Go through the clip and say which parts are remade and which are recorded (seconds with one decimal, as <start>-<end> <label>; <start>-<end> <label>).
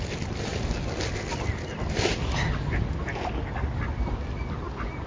0.0-5.1 recorded